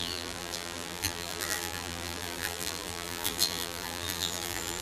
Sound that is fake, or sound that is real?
fake